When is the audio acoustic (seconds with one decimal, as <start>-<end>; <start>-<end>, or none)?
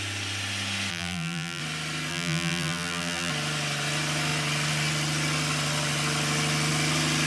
0.0-0.9; 1.6-2.1; 3.3-7.3